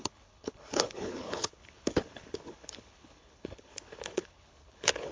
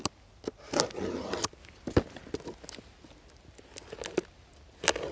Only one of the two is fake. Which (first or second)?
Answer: first